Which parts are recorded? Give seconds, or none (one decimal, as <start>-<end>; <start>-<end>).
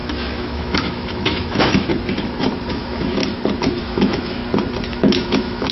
1.9-2.7; 3.2-3.8; 4.4-4.9